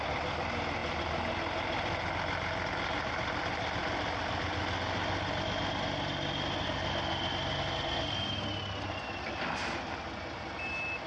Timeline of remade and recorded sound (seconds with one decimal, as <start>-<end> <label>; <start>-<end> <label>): 0.0-11.1 recorded